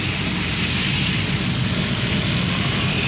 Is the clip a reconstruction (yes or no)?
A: no